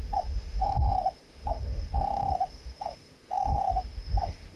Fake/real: fake